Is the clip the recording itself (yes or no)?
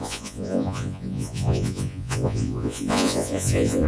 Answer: no